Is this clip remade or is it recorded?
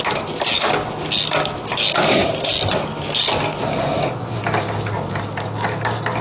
recorded